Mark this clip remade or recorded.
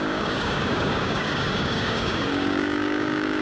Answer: remade